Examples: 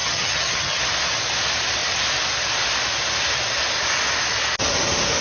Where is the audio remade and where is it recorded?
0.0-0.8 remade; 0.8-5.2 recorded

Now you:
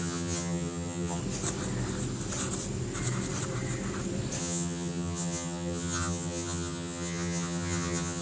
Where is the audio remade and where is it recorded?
0.0-1.2 remade; 1.2-4.4 recorded; 4.4-8.2 remade